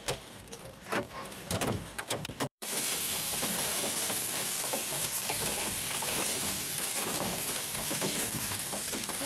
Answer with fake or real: fake